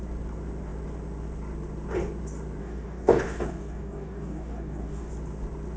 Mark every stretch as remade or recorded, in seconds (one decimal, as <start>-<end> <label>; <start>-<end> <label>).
0.0-2.6 recorded; 2.6-5.1 remade; 5.1-5.8 recorded